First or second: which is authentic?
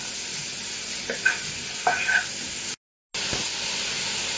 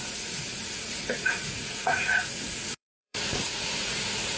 first